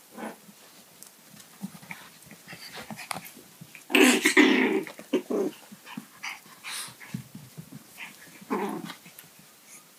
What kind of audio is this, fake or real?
real